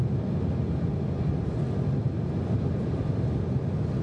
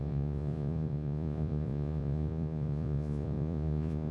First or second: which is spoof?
second